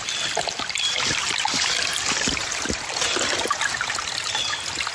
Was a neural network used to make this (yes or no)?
no